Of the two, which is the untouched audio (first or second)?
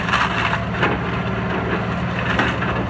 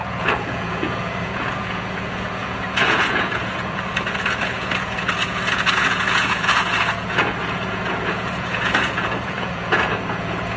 first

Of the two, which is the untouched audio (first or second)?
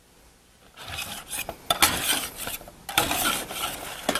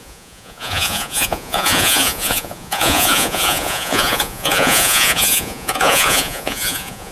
first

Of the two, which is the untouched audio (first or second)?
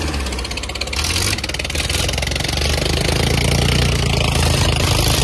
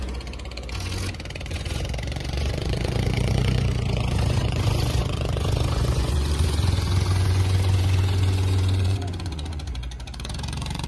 first